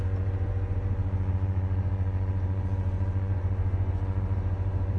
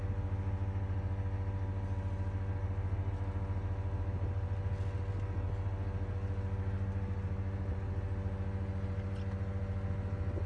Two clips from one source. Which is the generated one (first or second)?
first